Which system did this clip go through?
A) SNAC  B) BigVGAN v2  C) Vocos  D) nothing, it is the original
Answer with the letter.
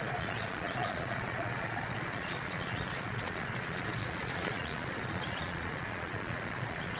C